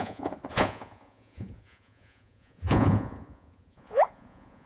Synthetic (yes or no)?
yes